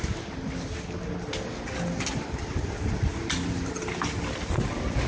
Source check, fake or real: real